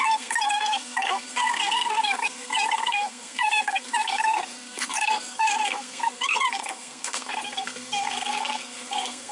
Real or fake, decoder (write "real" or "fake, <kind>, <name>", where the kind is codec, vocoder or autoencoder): fake, codec, SNAC